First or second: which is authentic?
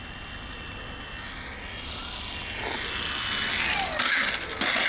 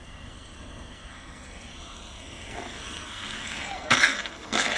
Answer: first